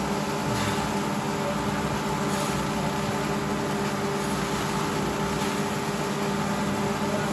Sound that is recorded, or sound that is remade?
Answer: recorded